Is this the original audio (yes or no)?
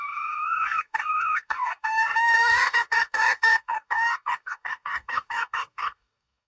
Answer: no